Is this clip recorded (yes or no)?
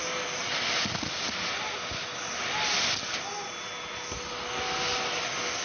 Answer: yes